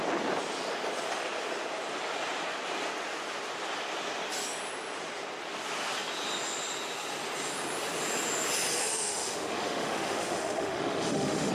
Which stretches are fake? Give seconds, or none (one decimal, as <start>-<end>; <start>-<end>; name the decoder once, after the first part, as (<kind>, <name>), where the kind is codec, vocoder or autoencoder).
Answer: 8.8-11.5 (autoencoder, DAC-VAE)